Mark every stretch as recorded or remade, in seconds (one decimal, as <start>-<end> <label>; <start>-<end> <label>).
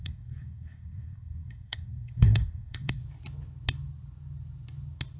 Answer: 0.0-3.0 remade; 3.0-5.2 recorded